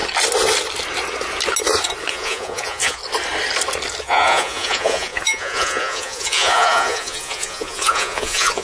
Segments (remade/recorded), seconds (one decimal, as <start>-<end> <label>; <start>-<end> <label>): 0.0-2.1 recorded; 2.1-3.0 remade; 3.0-4.0 recorded; 4.0-8.6 remade